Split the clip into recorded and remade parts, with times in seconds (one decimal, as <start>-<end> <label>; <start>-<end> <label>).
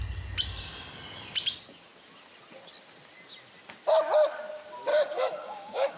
0.0-4.9 recorded; 4.9-6.0 remade